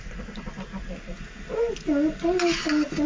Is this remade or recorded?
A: recorded